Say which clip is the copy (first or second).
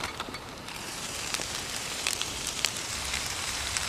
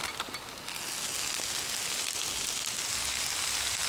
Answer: first